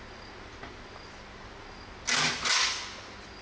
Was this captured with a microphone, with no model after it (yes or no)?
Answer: yes